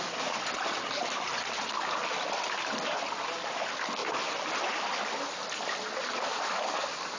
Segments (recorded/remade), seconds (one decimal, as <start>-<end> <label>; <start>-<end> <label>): 0.0-7.2 recorded